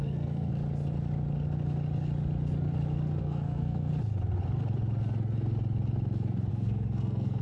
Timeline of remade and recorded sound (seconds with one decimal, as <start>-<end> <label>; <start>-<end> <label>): 0.0-0.5 remade; 0.5-3.2 recorded; 3.2-3.9 remade; 3.9-6.5 recorded; 6.5-7.4 remade